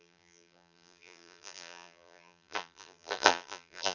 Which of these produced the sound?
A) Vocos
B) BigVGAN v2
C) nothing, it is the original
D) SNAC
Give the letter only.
B